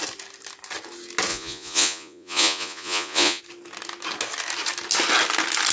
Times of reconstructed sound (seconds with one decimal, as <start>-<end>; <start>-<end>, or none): 1.3-3.4